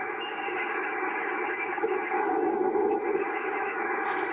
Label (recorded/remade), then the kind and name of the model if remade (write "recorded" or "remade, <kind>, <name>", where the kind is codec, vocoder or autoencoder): remade, autoencoder, DAC-VAE